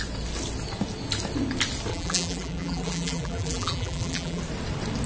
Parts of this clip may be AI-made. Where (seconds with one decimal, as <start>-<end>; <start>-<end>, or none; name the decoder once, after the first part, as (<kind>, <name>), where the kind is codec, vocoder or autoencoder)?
1.9-4.4 (vocoder, BigVGAN v2)